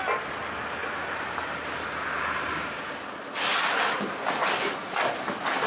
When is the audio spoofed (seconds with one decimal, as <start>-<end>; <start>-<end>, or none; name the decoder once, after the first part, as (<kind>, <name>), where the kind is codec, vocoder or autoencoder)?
none

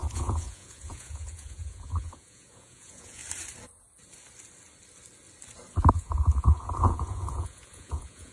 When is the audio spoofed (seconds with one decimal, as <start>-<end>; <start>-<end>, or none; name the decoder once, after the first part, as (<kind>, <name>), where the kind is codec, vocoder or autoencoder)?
0.0-3.2 (vocoder, Vocos); 5.9-8.3